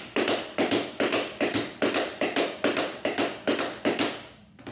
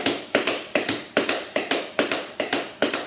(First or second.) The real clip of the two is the first